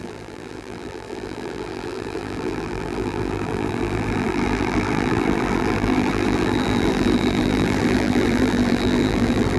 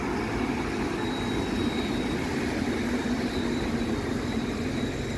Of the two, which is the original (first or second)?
second